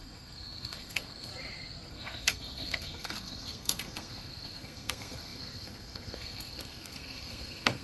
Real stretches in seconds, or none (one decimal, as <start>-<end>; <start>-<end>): 1.3-1.9